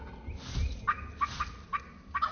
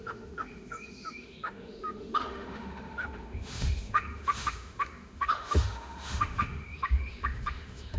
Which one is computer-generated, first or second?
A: second